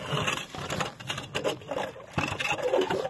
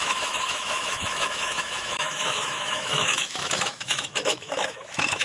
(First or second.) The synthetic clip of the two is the second